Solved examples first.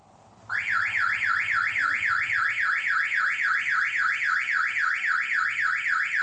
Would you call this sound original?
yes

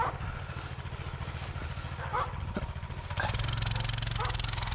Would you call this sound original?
yes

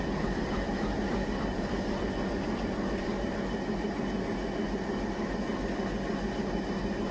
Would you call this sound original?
yes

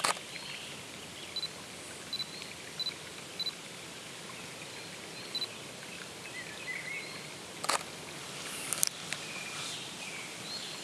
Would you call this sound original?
yes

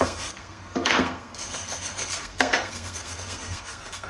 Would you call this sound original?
no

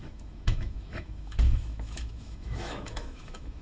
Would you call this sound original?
no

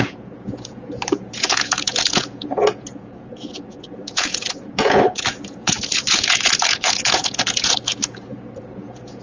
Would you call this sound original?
no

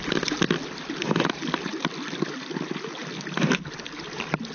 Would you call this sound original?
yes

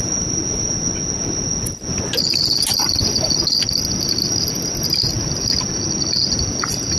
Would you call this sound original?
yes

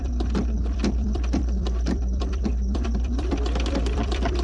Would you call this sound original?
no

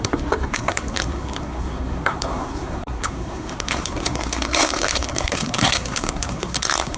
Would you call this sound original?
no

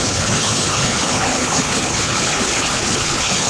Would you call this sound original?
no